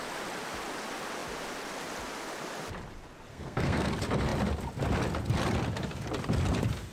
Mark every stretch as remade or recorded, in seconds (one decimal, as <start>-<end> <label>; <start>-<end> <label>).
0.0-3.3 recorded; 3.3-3.9 remade; 3.9-6.9 recorded

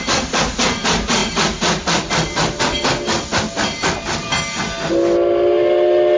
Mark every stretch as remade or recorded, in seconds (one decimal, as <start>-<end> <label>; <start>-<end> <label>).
0.0-6.2 recorded

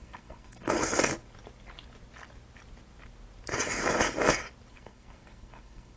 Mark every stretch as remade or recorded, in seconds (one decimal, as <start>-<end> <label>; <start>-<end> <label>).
0.0-1.1 remade; 1.1-4.7 recorded; 4.7-6.0 remade

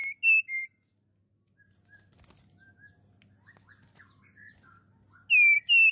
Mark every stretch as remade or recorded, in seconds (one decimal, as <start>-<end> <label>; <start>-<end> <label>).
0.0-5.9 recorded

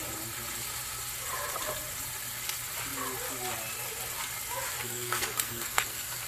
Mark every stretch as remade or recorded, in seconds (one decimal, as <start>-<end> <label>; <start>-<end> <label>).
0.0-4.8 recorded; 4.8-6.3 remade

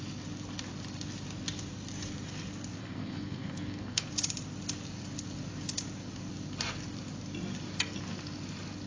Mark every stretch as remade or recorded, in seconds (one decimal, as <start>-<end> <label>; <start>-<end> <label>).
0.0-2.8 recorded; 2.8-4.1 remade; 4.1-8.9 recorded